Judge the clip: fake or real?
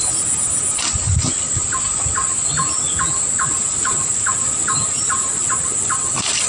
real